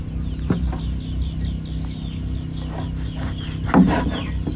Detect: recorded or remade recorded